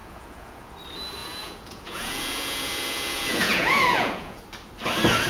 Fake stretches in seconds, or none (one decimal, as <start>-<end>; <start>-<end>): 0.0-0.7; 1.2-4.4